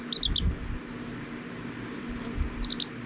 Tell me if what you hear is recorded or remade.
recorded